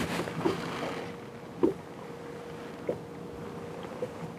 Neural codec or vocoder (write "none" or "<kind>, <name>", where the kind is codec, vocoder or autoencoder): none